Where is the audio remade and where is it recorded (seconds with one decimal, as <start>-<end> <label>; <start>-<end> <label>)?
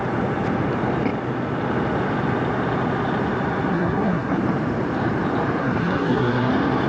0.0-3.7 recorded; 3.7-4.4 remade; 4.4-5.6 recorded; 5.6-6.5 remade; 6.5-6.9 recorded